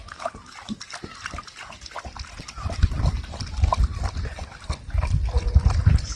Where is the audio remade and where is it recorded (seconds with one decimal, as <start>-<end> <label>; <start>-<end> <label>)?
0.0-6.2 recorded